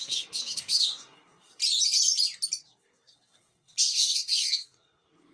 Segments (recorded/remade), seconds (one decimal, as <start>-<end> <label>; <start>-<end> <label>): 0.0-1.6 remade; 1.6-2.6 recorded; 2.6-5.3 remade